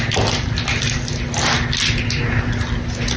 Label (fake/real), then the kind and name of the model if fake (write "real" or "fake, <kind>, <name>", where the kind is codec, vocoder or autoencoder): real